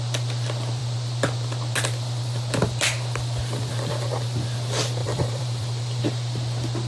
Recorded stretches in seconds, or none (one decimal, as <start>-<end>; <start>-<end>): 0.0-5.0; 6.0-6.9